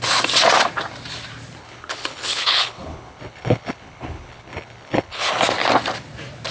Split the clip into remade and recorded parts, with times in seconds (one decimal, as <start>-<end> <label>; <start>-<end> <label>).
0.0-1.6 recorded; 1.6-5.3 remade; 5.3-6.5 recorded